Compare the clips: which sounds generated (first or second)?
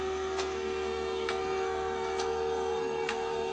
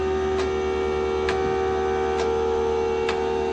first